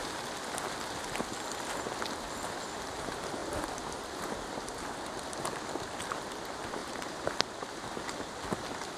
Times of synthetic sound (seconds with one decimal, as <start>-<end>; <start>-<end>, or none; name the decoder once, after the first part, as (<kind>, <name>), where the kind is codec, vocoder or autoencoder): 6.8-7.3 (vocoder, BigVGAN v2)

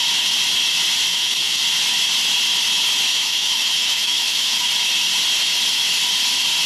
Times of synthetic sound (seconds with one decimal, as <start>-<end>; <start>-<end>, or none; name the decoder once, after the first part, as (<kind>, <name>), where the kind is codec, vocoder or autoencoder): 1.1-1.6 (autoencoder, DAC-VAE); 3.1-4.7

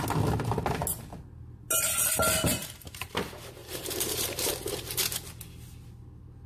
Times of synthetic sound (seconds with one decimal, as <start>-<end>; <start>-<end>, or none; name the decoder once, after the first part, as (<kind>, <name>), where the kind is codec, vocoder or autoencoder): 2.5-3.2 (vocoder, BigVGAN v2); 3.6-5.0

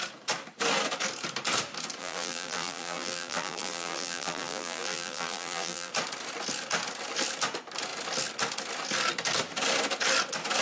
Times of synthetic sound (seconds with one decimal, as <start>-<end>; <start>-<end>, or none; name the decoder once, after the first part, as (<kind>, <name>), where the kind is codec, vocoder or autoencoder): 2.0-5.9 (vocoder, BigVGAN v2)

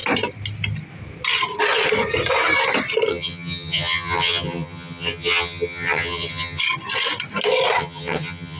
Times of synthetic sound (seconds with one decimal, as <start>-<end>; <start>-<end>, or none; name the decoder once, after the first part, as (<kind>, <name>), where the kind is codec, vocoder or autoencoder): 3.1-6.6 (vocoder, HiFi-GAN); 7.8-8.6

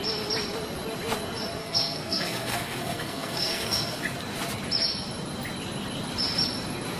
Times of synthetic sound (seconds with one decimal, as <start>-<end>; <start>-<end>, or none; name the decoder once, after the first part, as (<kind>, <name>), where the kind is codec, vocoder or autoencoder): 1.6-4.0 (codec, SNAC)

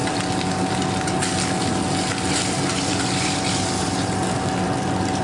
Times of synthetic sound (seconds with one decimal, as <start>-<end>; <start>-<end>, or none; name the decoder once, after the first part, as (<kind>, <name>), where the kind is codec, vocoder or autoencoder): none

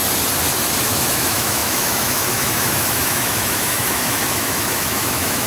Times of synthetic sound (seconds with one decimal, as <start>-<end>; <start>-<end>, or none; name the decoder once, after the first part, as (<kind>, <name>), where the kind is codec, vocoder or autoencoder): 0.8-5.5 (autoencoder, DAC-VAE)